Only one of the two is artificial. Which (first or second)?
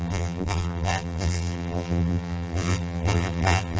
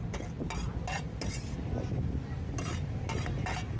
first